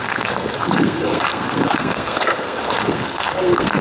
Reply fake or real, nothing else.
fake